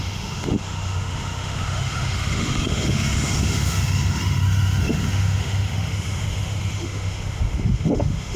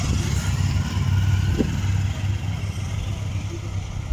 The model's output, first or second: first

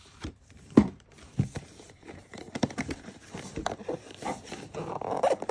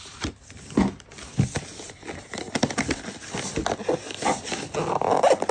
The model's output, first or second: first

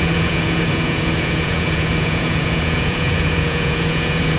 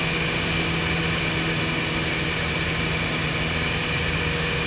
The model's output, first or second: first